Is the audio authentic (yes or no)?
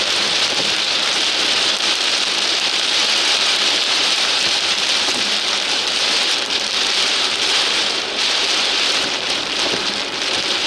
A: no